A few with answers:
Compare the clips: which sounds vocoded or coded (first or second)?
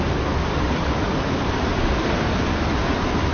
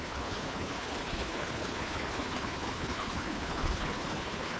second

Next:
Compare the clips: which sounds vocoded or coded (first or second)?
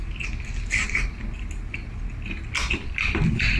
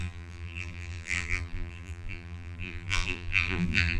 second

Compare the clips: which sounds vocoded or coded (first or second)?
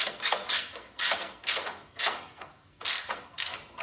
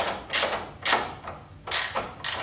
first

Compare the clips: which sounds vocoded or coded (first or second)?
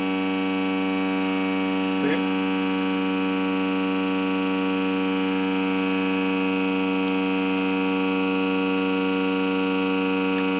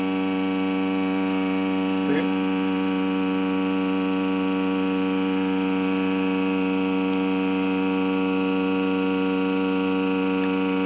second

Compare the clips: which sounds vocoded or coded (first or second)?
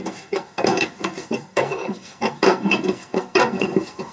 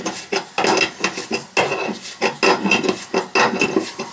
first